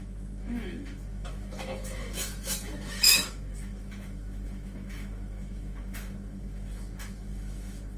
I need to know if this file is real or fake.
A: fake